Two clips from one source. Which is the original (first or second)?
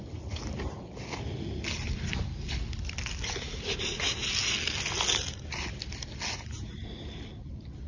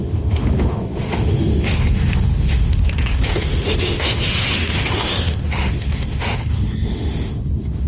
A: first